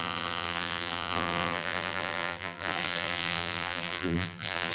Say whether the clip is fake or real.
fake